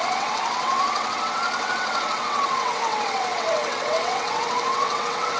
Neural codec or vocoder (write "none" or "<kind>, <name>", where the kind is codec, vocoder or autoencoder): vocoder, WaveNeXt